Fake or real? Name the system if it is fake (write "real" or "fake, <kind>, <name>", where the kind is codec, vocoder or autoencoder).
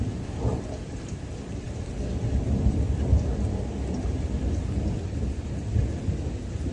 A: real